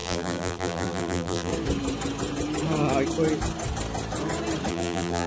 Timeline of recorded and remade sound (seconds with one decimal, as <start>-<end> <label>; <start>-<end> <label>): 0.0-1.5 remade; 1.5-4.7 recorded; 4.7-5.3 remade